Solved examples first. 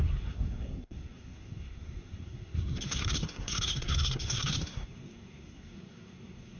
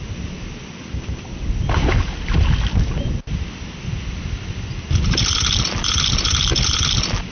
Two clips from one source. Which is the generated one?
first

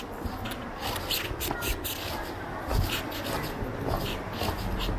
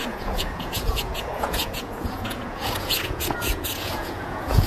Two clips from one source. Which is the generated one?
second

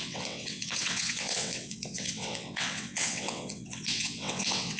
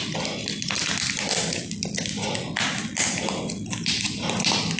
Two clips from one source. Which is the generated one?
first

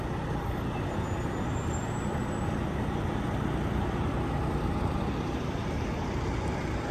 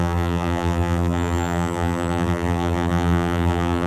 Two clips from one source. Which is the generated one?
second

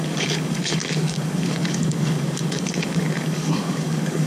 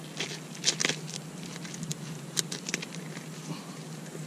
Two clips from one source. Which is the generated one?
first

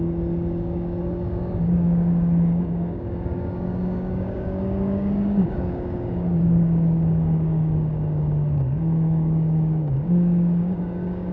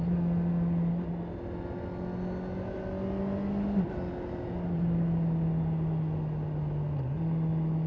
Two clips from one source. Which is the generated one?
first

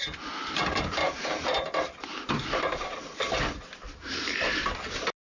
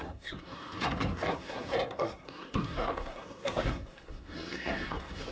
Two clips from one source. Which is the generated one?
second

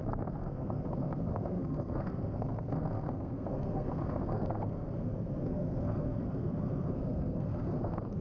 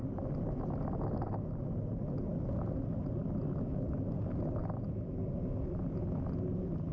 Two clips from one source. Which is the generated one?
first